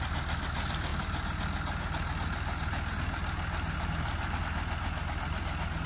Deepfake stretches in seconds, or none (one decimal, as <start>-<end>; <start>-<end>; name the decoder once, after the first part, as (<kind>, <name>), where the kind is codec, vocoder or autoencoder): none